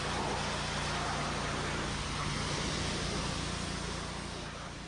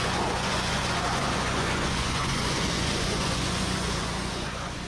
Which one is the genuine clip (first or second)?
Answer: first